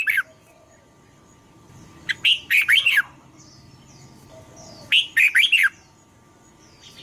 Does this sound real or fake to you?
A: real